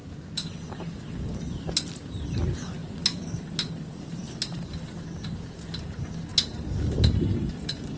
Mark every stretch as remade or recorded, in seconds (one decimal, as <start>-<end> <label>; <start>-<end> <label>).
0.0-8.0 recorded